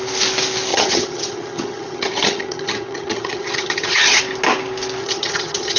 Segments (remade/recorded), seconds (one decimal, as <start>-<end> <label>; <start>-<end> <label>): 0.0-0.7 recorded; 0.7-4.2 remade; 4.2-5.0 recorded; 5.0-5.8 remade